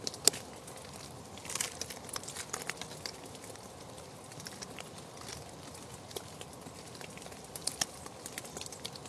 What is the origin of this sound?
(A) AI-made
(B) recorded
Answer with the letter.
B